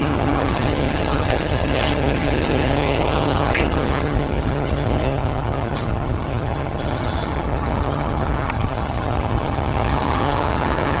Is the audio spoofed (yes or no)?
yes